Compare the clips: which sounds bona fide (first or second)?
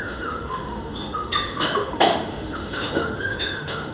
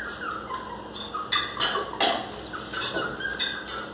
second